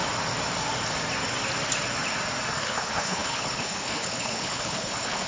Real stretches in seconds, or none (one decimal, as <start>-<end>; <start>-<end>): 0.0-2.6